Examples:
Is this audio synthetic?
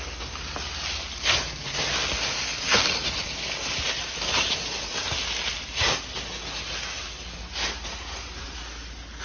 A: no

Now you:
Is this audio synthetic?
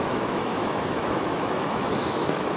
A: yes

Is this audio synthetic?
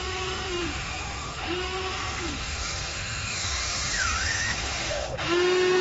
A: yes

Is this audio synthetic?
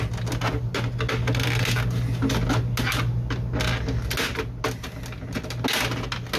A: no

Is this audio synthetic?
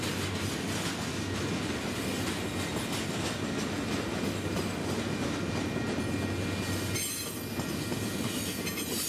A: no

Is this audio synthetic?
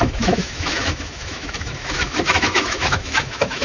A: yes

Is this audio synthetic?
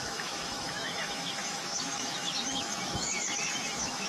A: yes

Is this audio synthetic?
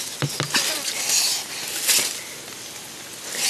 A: no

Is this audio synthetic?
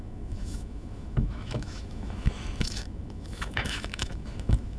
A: yes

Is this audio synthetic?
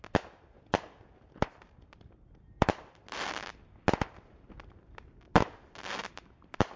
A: no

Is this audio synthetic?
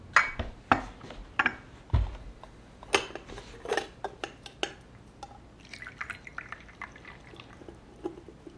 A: no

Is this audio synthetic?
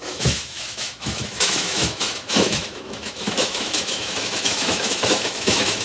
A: yes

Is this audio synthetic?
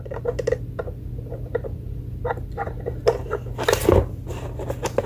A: no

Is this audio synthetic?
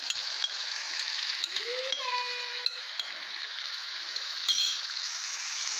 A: yes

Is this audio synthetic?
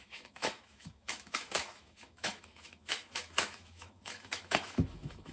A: yes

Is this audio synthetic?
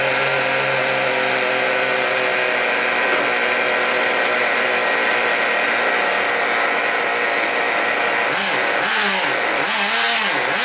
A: no